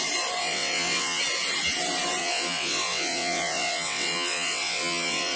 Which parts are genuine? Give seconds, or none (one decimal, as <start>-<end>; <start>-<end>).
0.0-0.4; 1.2-2.2